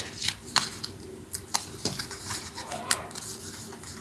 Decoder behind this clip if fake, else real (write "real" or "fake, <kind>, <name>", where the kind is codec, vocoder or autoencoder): real